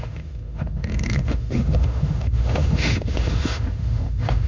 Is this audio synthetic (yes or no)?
yes